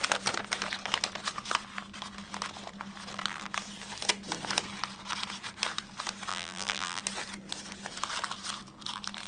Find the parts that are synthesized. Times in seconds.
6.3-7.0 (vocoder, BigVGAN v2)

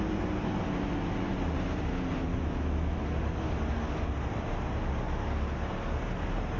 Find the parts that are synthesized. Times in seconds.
2.3-3.0 (autoencoder, DAC-VAE)

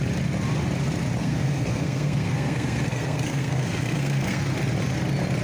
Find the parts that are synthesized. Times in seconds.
1.2-4.4 (codec, SNAC)

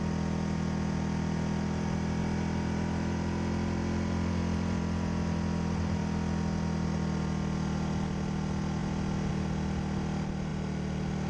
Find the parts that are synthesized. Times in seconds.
2.2-6.0 (vocoder, BigVGAN v2)

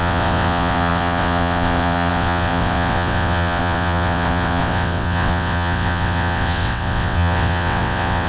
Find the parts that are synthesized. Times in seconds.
0.0-8.3 (vocoder, WaveNeXt)

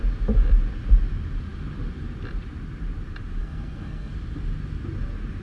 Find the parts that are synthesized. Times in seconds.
3.4-4.1 (codec, SNAC)